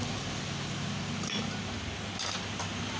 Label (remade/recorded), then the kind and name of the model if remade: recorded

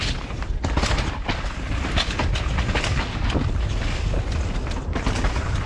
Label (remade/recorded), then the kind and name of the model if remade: recorded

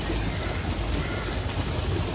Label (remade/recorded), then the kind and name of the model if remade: recorded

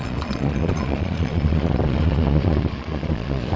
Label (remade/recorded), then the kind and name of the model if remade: remade, vocoder, Vocos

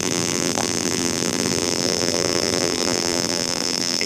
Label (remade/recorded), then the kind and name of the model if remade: remade, vocoder, BigVGAN v2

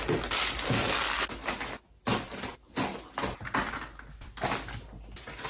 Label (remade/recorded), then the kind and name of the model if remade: recorded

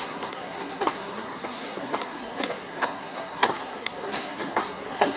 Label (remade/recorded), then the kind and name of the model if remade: remade, codec, SNAC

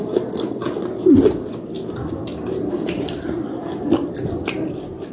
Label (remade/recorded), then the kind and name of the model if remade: recorded